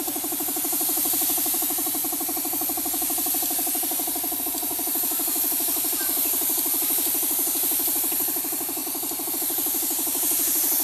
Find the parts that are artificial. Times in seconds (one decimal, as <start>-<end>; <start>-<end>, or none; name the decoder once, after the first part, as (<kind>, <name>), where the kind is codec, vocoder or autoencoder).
0.0-2.0 (vocoder, BigVGAN v2); 4.4-8.8; 9.3-10.8